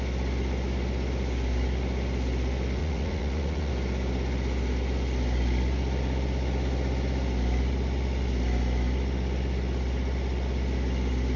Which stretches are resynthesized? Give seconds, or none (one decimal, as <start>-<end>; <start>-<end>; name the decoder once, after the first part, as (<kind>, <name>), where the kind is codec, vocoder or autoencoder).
2.8-3.7 (vocoder, Vocos)